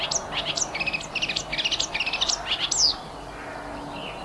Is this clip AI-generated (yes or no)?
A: no